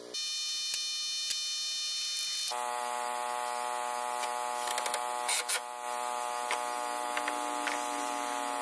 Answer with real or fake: real